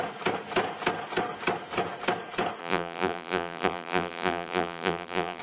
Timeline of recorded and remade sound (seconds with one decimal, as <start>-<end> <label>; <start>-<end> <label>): 0.0-2.6 recorded; 2.6-5.4 remade